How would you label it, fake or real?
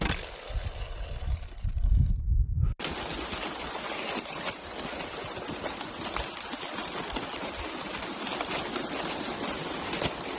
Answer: real